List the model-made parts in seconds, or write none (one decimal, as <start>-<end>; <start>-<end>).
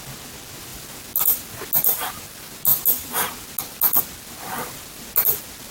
none